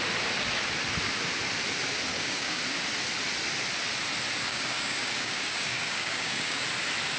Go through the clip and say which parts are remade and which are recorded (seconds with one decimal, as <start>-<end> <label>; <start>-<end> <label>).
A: 0.0-2.1 recorded; 2.1-2.6 remade; 2.6-4.5 recorded; 4.5-6.6 remade; 6.6-7.2 recorded

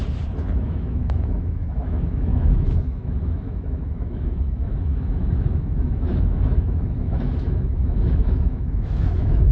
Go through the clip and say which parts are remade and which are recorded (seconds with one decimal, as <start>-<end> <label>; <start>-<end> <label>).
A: 0.0-0.6 recorded; 0.6-9.5 remade

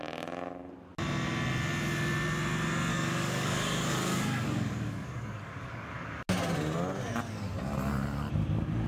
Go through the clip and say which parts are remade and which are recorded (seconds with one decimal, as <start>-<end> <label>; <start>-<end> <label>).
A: 0.0-2.9 recorded; 2.9-6.2 remade; 6.2-8.9 recorded

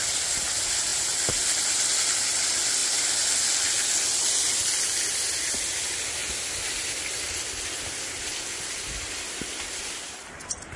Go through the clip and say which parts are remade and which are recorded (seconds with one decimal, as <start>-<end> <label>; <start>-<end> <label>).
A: 0.0-10.8 recorded

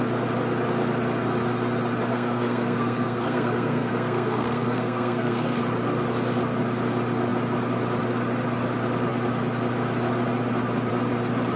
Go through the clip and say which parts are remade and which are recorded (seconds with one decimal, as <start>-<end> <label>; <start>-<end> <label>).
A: 0.0-2.1 recorded; 2.1-5.6 remade; 5.6-11.6 recorded

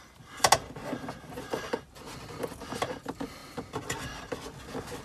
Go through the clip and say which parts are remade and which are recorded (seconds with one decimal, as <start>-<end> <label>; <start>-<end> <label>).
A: 0.0-5.0 recorded

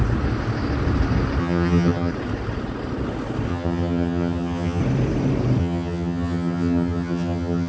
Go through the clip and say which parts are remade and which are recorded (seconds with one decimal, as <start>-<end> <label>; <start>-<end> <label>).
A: 0.0-1.4 recorded; 1.4-2.1 remade; 2.1-3.5 recorded; 3.5-4.8 remade; 4.8-5.6 recorded; 5.6-7.7 remade

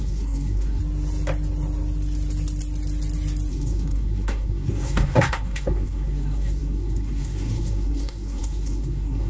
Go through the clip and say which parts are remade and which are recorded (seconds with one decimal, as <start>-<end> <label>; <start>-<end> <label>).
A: 0.0-0.8 remade; 0.8-3.5 recorded; 3.5-9.3 remade